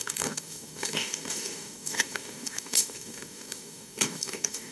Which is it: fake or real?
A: fake